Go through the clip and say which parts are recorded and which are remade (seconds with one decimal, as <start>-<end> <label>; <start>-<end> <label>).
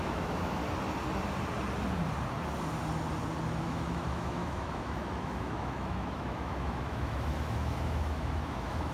0.0-0.6 remade; 0.6-3.6 recorded; 3.6-8.9 remade